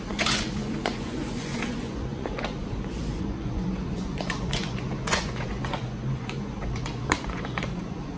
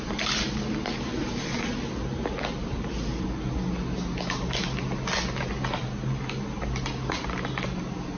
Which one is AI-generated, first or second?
first